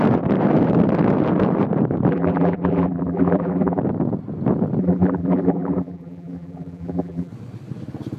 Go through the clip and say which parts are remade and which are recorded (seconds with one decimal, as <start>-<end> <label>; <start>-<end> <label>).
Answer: 0.0-2.1 recorded; 2.1-3.8 remade; 3.8-4.8 recorded; 4.8-7.3 remade; 7.3-8.2 recorded